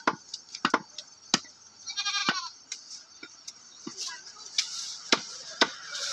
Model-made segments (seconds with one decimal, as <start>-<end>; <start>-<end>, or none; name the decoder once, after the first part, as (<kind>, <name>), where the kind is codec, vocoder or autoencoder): 2.2-3.5 (vocoder, BigVGAN v2); 3.9-6.1